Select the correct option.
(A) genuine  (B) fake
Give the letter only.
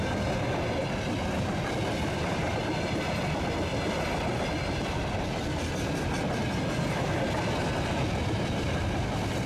A